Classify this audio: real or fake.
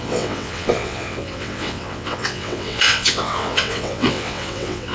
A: fake